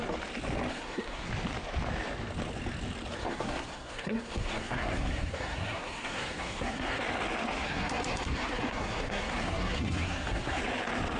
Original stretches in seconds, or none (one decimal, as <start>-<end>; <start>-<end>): 0.0-0.7; 1.3-3.2; 7.0-7.6; 10.6-11.2